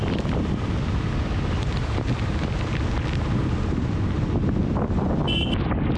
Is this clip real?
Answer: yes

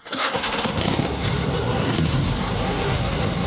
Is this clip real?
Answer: no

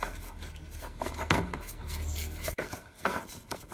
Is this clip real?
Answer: no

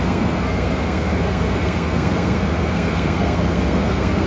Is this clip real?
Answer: no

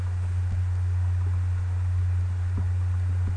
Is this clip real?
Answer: yes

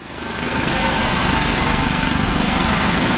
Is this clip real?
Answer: no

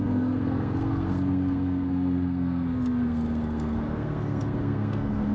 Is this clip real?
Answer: no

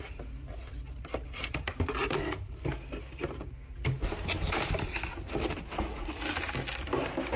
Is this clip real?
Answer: yes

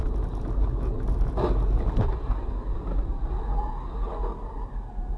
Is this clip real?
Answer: yes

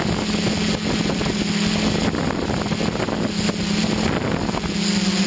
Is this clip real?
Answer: yes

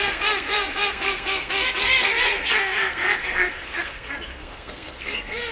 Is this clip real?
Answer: no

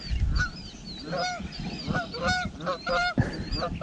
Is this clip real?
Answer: yes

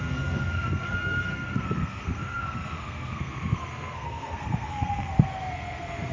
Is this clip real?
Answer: no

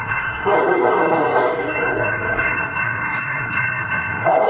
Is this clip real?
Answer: no